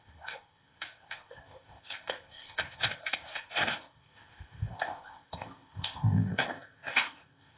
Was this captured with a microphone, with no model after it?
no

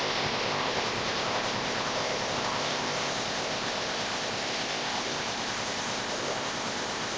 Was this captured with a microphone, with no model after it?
no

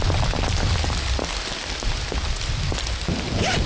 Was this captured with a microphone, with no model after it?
yes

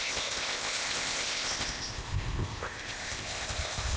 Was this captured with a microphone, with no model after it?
no